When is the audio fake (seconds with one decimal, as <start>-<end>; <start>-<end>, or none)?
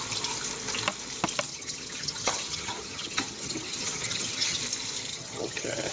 1.5-4.6; 5.1-5.9